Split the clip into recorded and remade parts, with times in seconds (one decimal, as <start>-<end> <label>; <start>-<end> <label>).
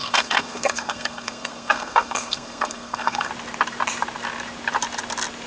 0.0-3.3 remade; 3.3-5.5 recorded